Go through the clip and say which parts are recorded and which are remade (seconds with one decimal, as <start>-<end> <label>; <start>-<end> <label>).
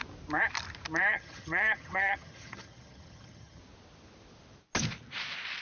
0.0-1.1 recorded; 1.1-3.6 remade; 3.6-5.6 recorded